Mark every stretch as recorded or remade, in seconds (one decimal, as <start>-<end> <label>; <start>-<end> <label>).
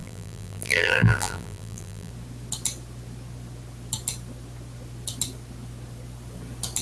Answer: 0.0-2.1 remade; 2.1-6.8 recorded